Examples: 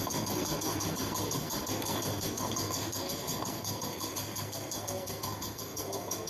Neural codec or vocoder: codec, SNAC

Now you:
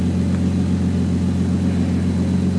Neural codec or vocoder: none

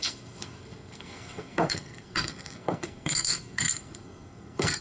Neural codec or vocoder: codec, SNAC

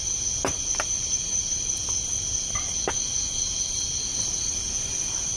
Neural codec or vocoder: none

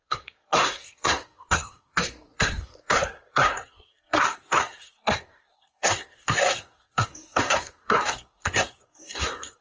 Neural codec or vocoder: codec, SNAC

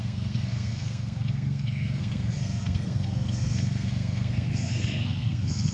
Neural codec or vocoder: codec, SNAC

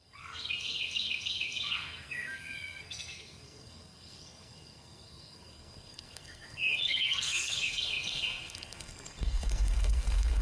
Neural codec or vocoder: codec, SNAC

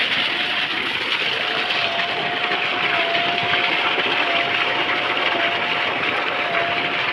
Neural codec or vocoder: none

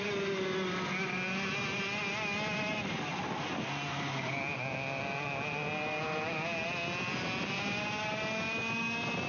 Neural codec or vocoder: none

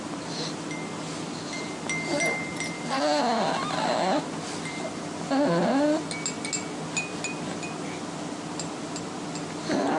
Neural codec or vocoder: none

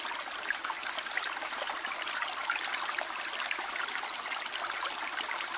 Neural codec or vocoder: none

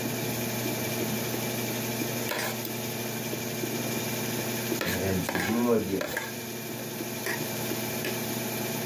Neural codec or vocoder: none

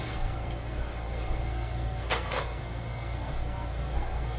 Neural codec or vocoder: codec, SNAC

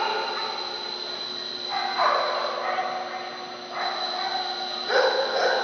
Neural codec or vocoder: none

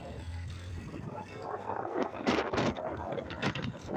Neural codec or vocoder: codec, SNAC